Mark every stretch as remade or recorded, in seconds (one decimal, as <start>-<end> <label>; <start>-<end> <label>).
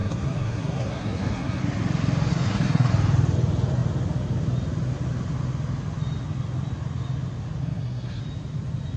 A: 0.0-1.6 remade; 1.6-2.3 recorded; 2.3-2.9 remade; 2.9-7.6 recorded; 7.6-8.2 remade; 8.2-9.0 recorded